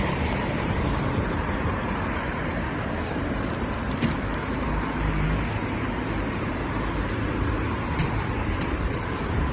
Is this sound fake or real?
fake